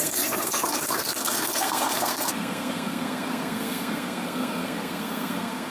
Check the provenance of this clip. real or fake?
fake